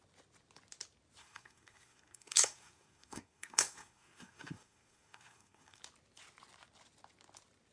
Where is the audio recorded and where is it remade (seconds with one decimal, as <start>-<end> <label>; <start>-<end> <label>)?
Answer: 0.0-1.2 recorded; 1.2-5.8 remade; 5.8-7.7 recorded